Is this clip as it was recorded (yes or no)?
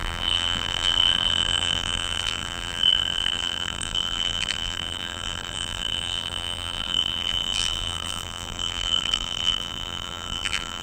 no